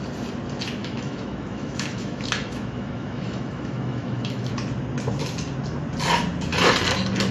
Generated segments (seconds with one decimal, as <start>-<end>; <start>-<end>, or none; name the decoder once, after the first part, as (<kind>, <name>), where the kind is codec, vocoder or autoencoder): 0.8-4.5 (autoencoder, DAC-VAE)